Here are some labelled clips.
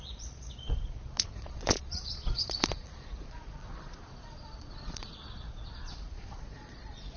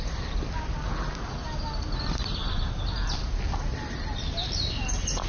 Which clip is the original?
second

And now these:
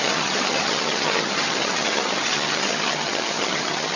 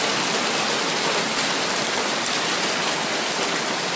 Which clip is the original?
second